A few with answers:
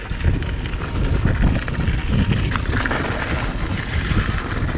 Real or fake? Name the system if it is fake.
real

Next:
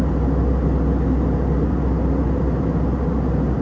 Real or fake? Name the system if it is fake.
real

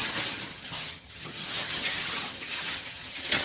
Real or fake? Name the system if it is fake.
fake, vocoder, HiFi-GAN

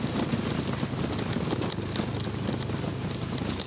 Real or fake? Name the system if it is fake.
real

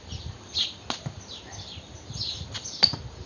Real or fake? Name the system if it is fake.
real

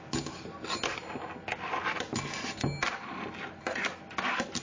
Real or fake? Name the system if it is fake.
real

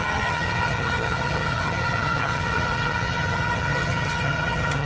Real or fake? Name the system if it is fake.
fake, vocoder, HiFi-GAN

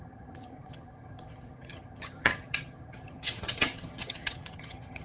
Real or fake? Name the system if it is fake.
fake, vocoder, HiFi-GAN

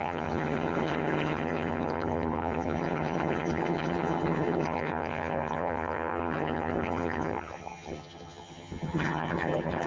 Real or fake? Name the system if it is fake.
fake, vocoder, HiFi-GAN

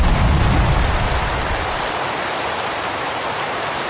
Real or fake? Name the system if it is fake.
real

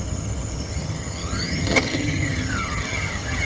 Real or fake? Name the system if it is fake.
fake, vocoder, HiFi-GAN